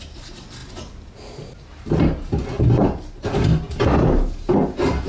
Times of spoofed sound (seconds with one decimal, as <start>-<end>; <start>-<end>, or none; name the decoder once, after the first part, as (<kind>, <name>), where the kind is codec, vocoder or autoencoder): none

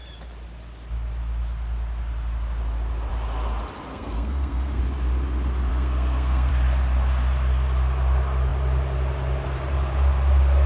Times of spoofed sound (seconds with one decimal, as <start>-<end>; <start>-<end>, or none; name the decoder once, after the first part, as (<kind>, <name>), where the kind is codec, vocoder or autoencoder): 3.9-4.8 (codec, SNAC); 5.7-6.5

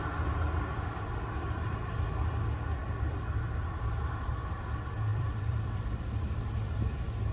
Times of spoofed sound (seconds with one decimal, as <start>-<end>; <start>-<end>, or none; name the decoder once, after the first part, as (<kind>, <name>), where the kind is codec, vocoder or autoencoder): 2.8-4.6 (vocoder, BigVGAN v2); 5.1-6.4

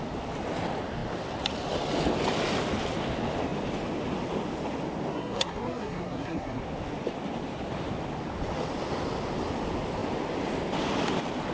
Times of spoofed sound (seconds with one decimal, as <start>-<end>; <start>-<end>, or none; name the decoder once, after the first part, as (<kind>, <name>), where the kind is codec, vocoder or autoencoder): 5.1-6.6 (codec, SNAC)

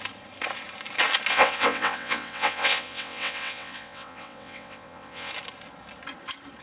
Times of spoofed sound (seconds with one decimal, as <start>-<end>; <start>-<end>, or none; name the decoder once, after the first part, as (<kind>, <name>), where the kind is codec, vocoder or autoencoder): 1.3-5.3 (vocoder, WaveNeXt)

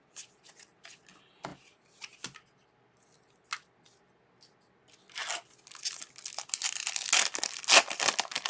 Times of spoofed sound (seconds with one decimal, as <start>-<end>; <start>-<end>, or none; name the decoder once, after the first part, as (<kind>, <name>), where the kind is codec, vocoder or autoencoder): 1.5-2.8 (vocoder, BigVGAN v2)

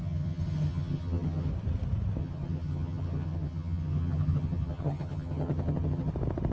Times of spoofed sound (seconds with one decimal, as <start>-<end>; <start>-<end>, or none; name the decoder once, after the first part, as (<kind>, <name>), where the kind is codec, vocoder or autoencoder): 0.0-1.5 (vocoder, HiFi-GAN); 2.2-6.1

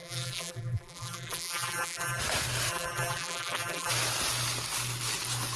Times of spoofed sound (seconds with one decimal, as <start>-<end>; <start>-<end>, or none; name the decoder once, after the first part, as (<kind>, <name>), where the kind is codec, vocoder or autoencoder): 0.0-2.2 (vocoder, BigVGAN v2); 2.7-3.9